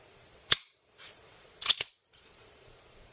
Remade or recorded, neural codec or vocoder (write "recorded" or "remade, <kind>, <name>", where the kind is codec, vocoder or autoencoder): remade, vocoder, Vocos